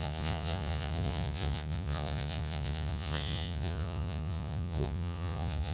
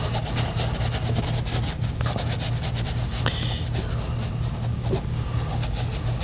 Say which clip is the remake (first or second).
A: first